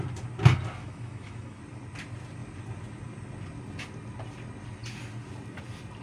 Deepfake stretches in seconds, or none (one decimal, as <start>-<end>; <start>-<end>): 0.8-1.6